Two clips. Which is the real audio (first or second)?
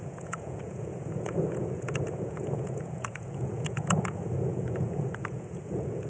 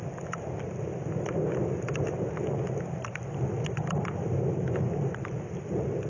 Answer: second